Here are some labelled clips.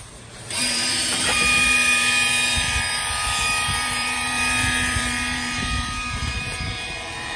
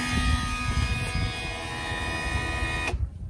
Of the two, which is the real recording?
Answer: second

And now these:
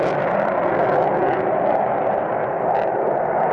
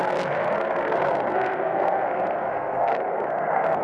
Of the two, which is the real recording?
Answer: first